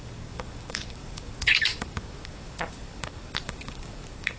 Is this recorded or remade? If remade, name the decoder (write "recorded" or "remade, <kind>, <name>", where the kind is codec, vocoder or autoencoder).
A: remade, codec, DAC